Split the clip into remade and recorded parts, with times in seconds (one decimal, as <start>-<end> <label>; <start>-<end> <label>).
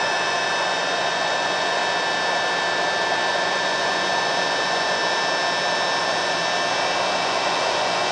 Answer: 0.0-1.8 remade; 1.8-3.3 recorded; 3.3-5.0 remade; 5.0-6.0 recorded; 6.0-6.4 remade; 6.4-7.1 recorded; 7.1-8.1 remade